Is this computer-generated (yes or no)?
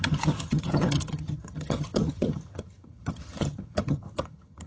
yes